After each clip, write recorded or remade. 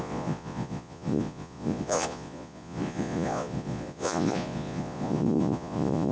remade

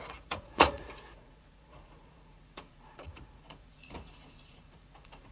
remade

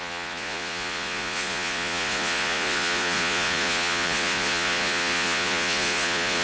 remade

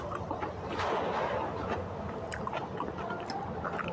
recorded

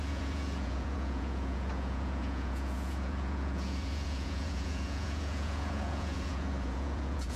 remade